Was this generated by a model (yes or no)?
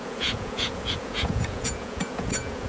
yes